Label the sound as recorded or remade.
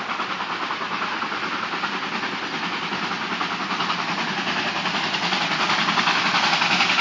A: recorded